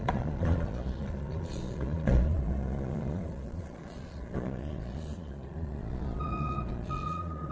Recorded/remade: remade